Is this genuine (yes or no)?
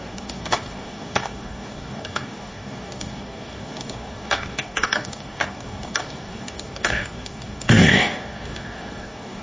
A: no